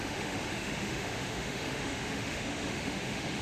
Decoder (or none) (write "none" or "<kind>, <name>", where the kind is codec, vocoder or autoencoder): autoencoder, DAC-VAE